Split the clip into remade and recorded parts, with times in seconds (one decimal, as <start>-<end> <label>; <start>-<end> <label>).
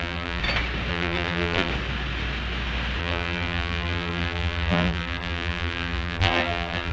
0.0-0.4 remade; 0.4-0.9 recorded; 0.9-1.7 remade; 1.7-3.0 recorded; 3.0-6.9 remade